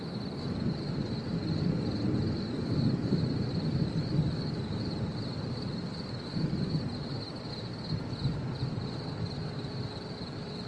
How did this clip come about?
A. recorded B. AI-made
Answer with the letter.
A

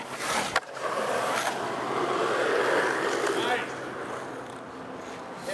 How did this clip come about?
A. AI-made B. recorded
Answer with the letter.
B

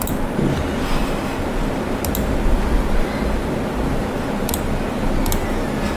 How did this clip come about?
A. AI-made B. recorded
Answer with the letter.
B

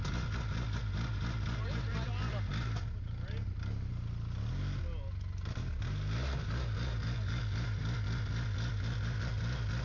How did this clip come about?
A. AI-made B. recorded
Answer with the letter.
B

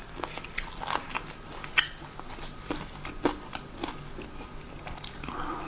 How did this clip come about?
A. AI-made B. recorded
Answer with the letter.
B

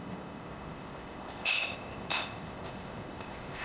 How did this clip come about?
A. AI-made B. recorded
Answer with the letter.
A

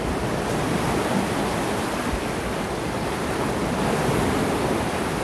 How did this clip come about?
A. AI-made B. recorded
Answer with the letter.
B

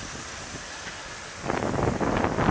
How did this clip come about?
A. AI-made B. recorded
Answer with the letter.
B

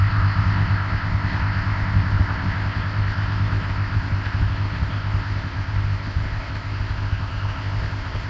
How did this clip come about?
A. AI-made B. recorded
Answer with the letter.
A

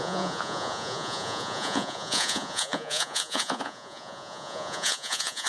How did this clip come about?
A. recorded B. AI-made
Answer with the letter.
B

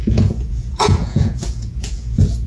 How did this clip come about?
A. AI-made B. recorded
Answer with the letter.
A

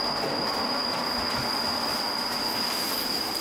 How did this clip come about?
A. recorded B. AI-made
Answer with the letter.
A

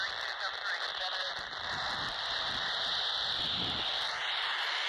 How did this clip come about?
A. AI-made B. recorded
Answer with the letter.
B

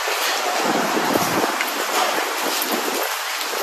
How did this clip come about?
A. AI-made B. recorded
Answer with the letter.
B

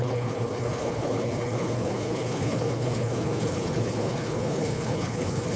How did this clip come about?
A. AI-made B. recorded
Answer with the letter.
A